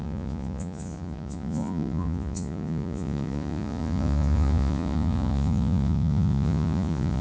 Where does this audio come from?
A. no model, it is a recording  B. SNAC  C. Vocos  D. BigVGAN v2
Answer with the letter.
C